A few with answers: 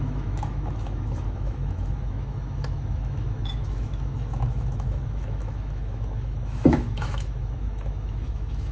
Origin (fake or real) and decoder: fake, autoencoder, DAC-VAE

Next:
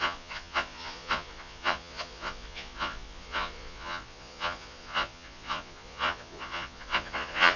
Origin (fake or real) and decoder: fake, vocoder, Vocos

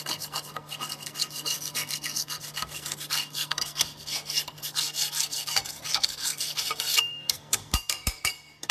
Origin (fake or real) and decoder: fake, codec, SNAC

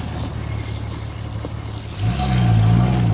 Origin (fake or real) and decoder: real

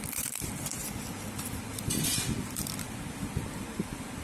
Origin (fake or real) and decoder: real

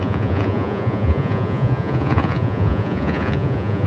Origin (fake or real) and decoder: fake, vocoder, Vocos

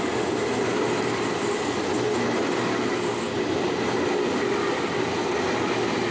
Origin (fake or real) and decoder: real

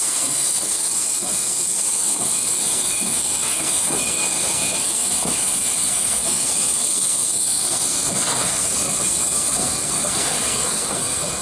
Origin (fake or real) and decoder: fake, codec, SNAC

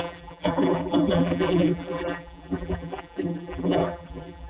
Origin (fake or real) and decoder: fake, vocoder, BigVGAN v2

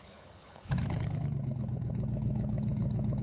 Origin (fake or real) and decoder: fake, codec, HILCodec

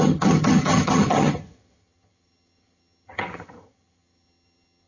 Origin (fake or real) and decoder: fake, vocoder, HiFi-GAN